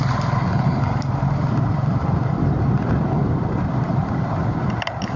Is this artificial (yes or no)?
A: yes